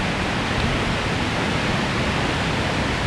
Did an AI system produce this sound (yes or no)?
no